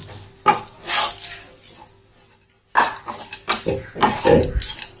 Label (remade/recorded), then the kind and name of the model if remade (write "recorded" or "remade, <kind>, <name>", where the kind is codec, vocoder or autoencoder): recorded